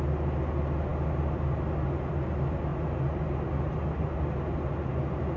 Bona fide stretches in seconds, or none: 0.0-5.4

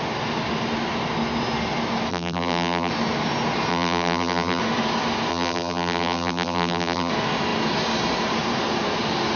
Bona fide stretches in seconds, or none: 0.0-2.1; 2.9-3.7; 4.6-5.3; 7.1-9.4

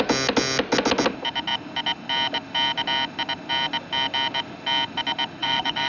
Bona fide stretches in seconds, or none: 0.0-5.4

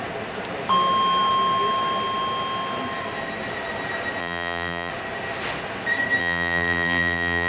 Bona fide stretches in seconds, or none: 0.0-4.2; 4.9-6.2